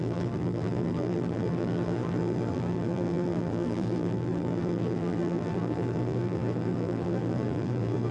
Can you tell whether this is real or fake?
fake